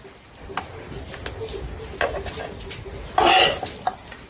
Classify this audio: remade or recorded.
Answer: recorded